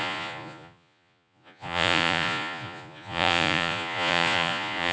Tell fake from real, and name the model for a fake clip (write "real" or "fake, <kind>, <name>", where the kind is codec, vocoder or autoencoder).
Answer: fake, vocoder, Vocos